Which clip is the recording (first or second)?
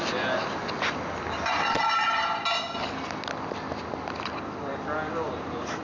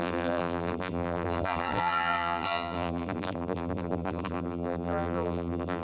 first